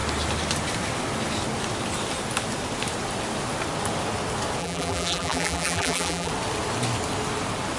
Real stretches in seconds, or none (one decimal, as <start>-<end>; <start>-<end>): 0.0-4.6; 6.3-7.8